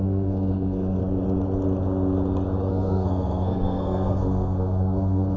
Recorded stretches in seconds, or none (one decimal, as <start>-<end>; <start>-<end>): 1.0-2.7

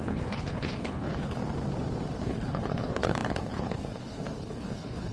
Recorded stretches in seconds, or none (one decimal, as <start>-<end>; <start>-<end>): 1.4-2.2

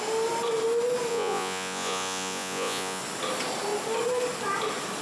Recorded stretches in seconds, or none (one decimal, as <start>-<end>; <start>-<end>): 0.0-1.1; 3.0-5.0

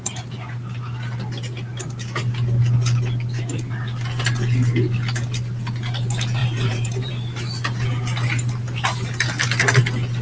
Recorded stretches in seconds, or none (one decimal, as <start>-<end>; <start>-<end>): 0.0-6.4; 7.1-10.2

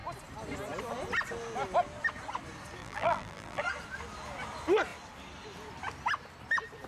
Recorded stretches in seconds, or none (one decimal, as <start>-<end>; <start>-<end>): 0.0-2.8; 3.6-6.9